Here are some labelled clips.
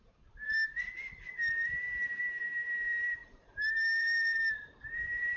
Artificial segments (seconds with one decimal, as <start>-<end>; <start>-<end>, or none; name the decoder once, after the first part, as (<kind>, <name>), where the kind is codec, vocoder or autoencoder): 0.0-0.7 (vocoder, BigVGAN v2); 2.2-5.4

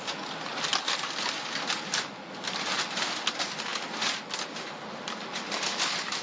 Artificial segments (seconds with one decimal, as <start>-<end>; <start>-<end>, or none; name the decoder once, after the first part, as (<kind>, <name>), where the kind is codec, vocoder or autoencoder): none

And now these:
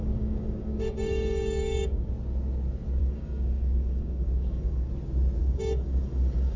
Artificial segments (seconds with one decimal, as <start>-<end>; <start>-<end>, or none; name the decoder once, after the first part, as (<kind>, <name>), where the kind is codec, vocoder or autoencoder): 0.0-2.1 (codec, DAC); 3.0-4.9; 5.4-6.6

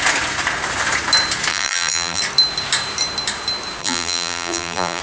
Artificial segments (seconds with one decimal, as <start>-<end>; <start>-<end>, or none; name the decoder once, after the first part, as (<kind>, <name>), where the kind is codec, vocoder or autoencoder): 1.5-2.2 (vocoder, BigVGAN v2); 3.8-5.0

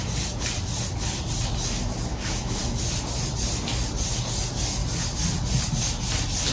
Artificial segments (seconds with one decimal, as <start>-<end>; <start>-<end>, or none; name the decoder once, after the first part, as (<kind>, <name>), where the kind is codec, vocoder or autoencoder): 2.1-2.6 (autoencoder, DAC-VAE)

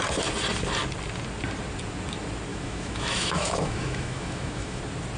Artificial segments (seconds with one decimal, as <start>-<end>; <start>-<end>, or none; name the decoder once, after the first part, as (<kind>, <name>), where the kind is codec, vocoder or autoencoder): 2.5-4.8 (autoencoder, DAC-VAE)